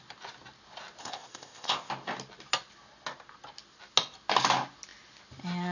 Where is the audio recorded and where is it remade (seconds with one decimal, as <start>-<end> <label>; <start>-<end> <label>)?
0.0-1.0 recorded; 1.0-1.9 remade; 1.9-5.7 recorded